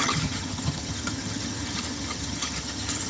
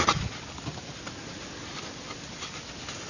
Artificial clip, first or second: first